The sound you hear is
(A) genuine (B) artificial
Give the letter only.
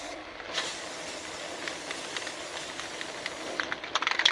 A